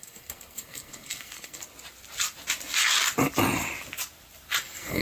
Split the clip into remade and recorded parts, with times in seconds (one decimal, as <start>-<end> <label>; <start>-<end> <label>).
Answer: 0.0-1.6 remade; 1.6-4.6 recorded; 4.6-5.0 remade